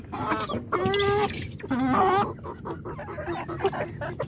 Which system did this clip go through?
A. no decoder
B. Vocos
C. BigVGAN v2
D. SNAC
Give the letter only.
A